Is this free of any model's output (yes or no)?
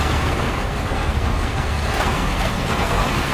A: no